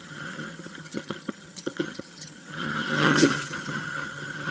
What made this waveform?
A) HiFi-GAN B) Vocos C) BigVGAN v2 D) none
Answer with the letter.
A